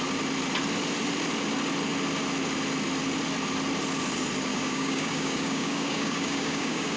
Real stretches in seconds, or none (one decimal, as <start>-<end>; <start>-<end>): 0.0-4.5